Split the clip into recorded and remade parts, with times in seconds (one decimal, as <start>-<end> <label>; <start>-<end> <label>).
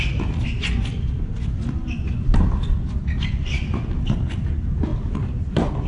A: 0.0-5.9 recorded